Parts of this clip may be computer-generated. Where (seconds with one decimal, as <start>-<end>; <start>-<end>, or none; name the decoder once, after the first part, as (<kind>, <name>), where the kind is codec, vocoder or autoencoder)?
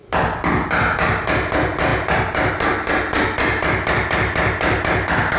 none